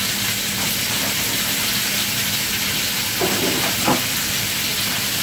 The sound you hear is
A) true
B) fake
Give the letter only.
A